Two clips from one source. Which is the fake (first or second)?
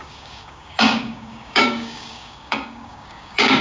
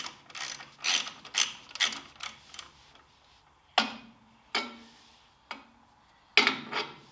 first